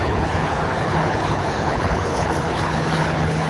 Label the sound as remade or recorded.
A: remade